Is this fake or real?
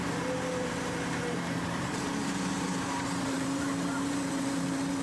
fake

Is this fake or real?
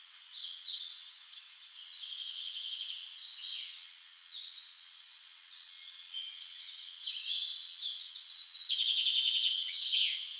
fake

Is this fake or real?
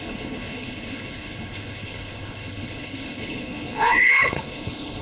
fake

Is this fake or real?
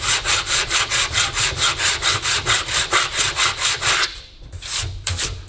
fake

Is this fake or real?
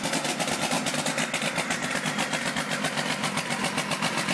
real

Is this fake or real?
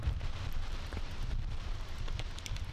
fake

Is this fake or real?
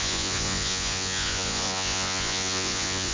fake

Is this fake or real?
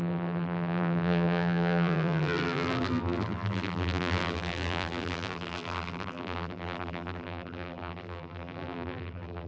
fake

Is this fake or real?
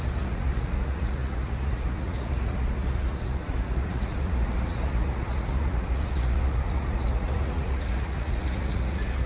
fake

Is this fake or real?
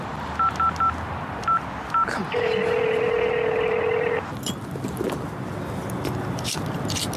real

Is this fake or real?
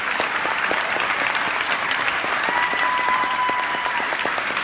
fake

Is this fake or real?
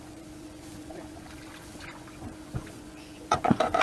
fake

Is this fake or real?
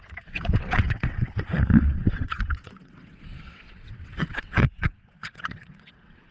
fake